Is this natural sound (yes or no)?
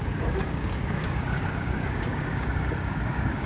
no